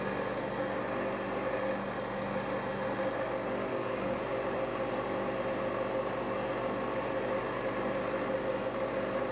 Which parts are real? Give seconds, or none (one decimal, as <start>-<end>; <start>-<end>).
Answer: 0.0-3.7; 4.2-9.3